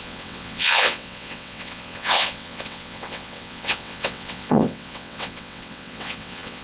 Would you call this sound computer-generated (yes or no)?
yes